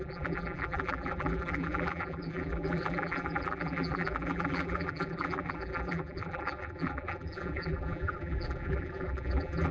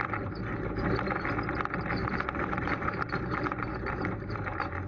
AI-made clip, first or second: first